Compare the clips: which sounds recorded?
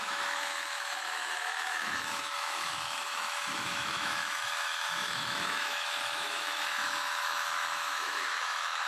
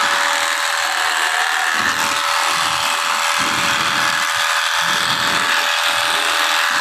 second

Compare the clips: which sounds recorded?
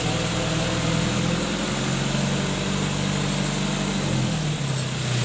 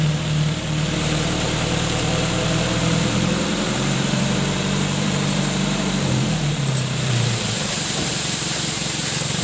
first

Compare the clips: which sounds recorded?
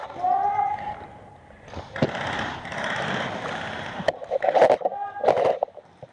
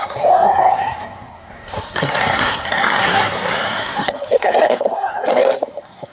first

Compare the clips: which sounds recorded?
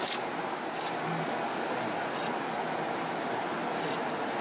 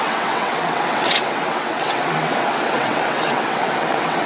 first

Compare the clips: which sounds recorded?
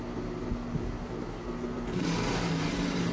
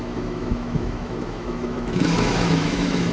first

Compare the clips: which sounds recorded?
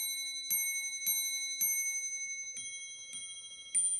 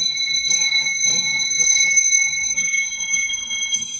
first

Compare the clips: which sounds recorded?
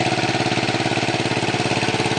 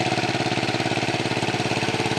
first